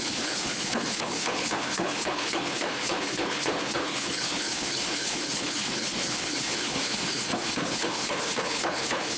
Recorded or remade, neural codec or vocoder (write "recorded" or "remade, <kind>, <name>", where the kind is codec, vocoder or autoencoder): remade, codec, HILCodec